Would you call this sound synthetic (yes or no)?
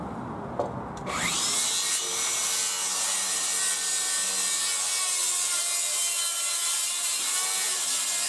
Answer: no